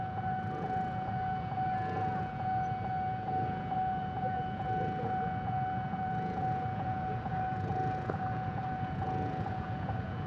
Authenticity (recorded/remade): remade